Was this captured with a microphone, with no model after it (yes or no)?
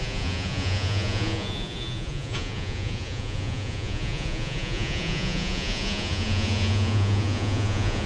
no